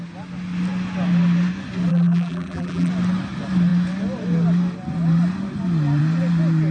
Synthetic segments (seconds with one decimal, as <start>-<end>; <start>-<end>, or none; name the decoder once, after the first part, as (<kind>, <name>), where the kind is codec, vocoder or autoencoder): 1.9-2.9 (vocoder, BigVGAN v2)